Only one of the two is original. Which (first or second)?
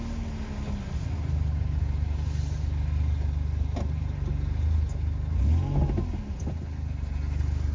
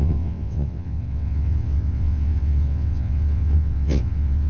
first